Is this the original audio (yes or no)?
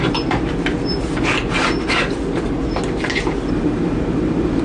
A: yes